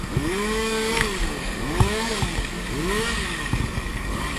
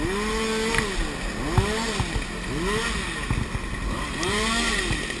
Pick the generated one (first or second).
first